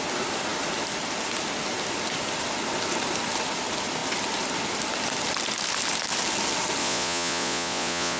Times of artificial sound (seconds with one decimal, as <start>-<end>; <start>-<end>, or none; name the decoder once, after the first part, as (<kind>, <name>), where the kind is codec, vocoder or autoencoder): 6.8-8.2 (vocoder, Vocos)